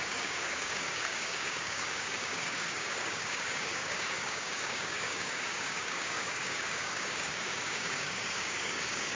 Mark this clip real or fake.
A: fake